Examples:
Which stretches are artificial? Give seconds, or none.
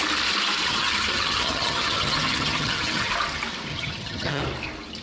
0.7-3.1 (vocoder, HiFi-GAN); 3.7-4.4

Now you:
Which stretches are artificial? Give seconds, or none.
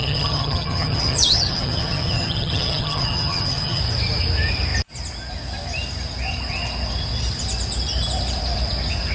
0.0-3.8 (vocoder, HiFi-GAN)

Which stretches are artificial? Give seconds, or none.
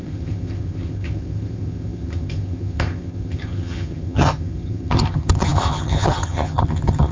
0.0-7.1 (vocoder, HiFi-GAN)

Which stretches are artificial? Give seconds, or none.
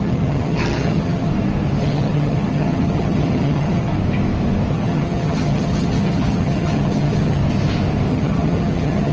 0.0-1.3 (vocoder, HiFi-GAN); 1.8-3.9; 4.7-7.4; 8.1-9.1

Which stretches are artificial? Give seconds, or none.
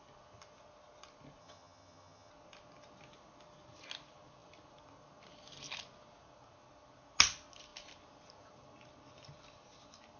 1.4-2.3 (vocoder, HiFi-GAN)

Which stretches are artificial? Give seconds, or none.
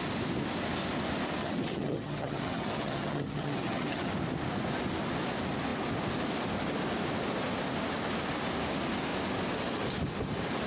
1.4-4.1 (vocoder, HiFi-GAN)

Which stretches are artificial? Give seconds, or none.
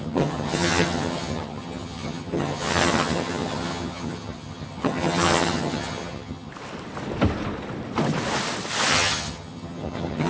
0.0-6.5 (vocoder, HiFi-GAN); 8.9-10.3